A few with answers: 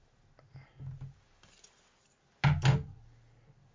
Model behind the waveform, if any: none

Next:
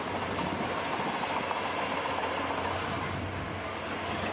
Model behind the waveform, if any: none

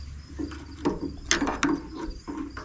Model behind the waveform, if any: none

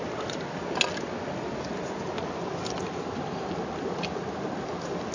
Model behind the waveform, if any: none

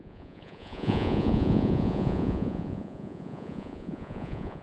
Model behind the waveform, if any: vocoder, Vocos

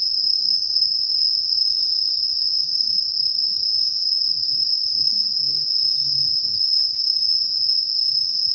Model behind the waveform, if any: none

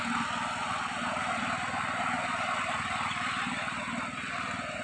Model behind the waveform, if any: none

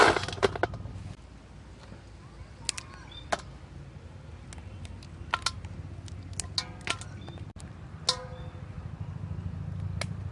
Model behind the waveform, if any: none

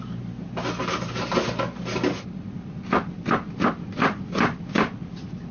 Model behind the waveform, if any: none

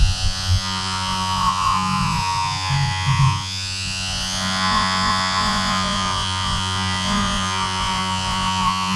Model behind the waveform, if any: vocoder, Vocos